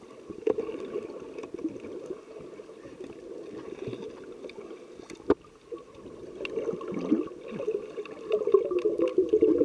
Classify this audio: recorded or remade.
recorded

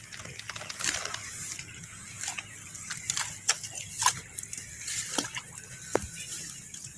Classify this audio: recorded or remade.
recorded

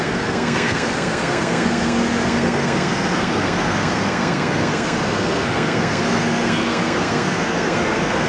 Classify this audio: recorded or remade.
remade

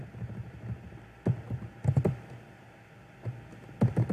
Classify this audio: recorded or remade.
recorded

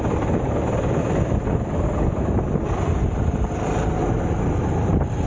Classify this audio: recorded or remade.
recorded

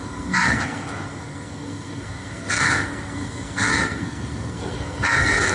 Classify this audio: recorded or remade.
remade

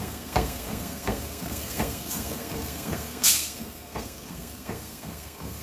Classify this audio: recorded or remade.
remade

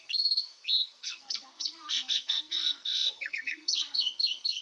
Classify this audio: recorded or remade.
remade